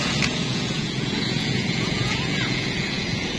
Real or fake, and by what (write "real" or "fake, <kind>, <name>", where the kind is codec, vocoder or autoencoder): fake, vocoder, Vocos